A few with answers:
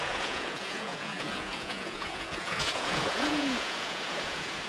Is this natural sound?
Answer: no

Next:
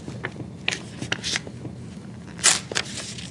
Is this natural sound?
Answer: yes